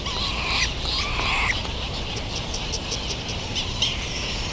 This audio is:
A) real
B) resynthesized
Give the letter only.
A